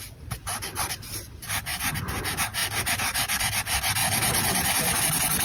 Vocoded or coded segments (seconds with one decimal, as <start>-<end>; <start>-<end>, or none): 1.7-2.2; 4.0-5.0